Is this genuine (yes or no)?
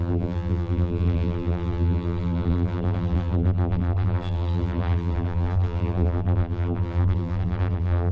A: no